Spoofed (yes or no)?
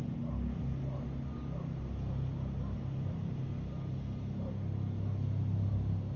no